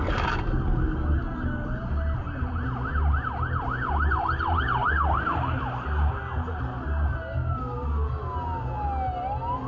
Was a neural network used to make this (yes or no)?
no